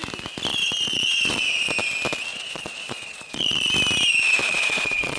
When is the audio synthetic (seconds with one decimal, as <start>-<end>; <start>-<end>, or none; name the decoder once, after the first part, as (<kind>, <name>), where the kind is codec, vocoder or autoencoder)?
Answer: 0.5-1.7 (vocoder, Vocos); 2.3-3.7; 4.4-5.2

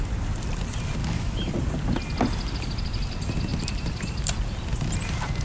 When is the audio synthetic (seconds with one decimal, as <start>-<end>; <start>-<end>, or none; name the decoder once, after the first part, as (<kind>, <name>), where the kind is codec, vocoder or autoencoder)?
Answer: 1.0-1.5 (autoencoder, DAC-VAE)

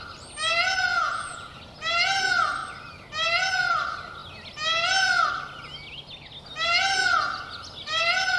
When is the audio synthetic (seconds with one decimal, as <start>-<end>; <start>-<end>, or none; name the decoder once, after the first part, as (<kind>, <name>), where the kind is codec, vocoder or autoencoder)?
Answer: 0.9-1.6 (vocoder, Vocos)

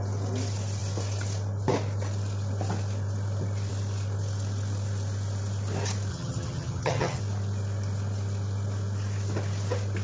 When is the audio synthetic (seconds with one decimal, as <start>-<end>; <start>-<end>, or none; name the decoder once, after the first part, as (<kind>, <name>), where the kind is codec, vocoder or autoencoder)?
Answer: 6.1-7.2 (vocoder, HiFi-GAN)

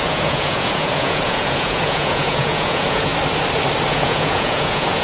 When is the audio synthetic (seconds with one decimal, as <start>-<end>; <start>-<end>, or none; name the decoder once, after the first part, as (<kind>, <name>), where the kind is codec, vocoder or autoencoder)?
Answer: 0.0-3.1 (vocoder, Vocos); 3.9-5.0

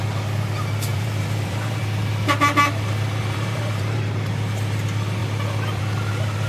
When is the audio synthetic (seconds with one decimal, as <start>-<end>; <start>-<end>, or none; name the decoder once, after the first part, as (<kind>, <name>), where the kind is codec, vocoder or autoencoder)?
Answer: 0.9-1.8 (vocoder, BigVGAN v2); 3.2-4.0